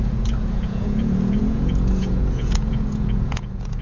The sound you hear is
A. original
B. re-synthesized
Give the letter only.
B